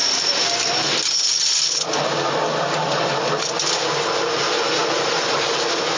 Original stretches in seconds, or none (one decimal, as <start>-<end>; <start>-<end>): 0.0-6.0